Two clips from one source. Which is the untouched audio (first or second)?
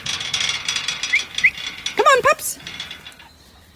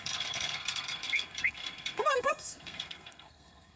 first